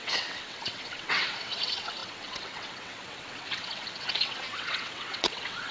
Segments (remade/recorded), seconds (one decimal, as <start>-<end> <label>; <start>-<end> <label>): 0.0-5.7 remade